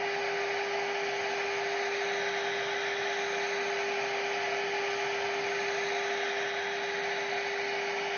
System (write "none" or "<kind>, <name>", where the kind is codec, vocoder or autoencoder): none